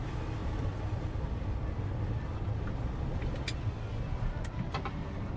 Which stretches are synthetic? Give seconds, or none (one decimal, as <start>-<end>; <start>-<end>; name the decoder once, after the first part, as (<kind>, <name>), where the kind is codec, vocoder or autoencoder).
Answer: none